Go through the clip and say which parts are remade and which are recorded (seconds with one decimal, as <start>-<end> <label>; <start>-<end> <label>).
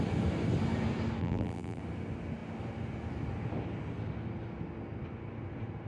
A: 0.0-1.2 recorded; 1.2-1.8 remade; 1.8-5.9 recorded